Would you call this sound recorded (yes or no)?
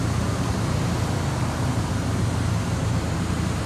no